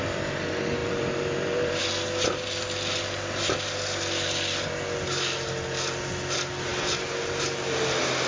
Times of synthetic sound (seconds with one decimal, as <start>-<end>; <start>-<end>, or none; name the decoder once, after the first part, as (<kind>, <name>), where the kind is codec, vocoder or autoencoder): 0.8-1.8 (vocoder, BigVGAN v2)